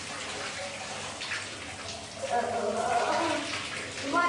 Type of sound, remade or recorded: recorded